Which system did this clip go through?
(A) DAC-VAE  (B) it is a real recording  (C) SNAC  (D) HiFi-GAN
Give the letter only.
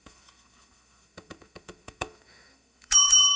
A